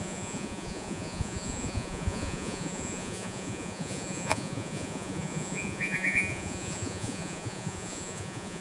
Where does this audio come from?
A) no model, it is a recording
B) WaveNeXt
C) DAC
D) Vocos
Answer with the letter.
D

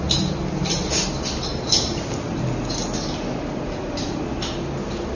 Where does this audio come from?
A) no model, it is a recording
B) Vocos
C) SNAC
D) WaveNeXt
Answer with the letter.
A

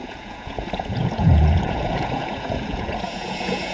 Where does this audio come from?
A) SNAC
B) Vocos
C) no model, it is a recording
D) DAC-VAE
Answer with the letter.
B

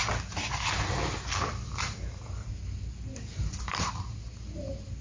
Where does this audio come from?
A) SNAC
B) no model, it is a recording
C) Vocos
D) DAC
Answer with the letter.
B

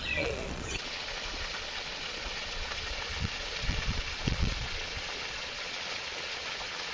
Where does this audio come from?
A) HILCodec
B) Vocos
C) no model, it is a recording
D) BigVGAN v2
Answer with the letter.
B